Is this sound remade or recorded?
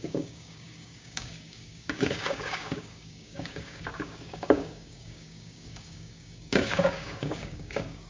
remade